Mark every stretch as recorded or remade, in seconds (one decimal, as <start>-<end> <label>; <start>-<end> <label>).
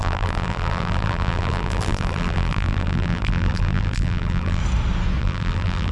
0.0-4.6 remade; 4.6-5.2 recorded; 5.2-5.9 remade